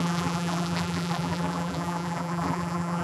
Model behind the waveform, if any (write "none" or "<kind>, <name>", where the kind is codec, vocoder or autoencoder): vocoder, BigVGAN v2